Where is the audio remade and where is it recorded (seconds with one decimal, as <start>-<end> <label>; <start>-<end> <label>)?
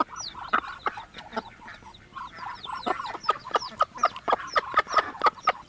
0.0-5.7 recorded